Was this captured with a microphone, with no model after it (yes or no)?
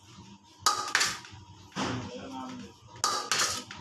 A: yes